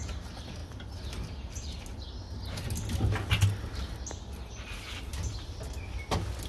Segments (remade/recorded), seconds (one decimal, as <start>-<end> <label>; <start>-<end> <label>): 0.0-6.5 recorded